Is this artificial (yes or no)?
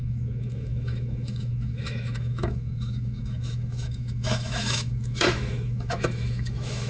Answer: yes